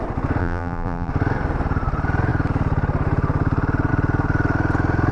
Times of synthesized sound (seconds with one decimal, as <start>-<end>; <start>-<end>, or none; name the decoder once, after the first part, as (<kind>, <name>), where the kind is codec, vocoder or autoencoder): 0.4-1.1 (vocoder, BigVGAN v2)